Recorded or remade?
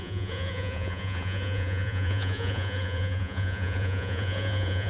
remade